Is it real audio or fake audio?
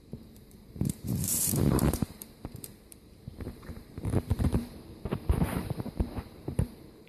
fake